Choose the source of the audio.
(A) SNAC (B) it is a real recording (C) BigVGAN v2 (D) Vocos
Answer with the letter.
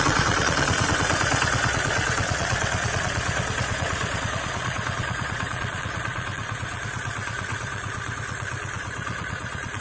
D